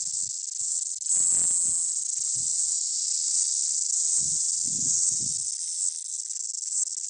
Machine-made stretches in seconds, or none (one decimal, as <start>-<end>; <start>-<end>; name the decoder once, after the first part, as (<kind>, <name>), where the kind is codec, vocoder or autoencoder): none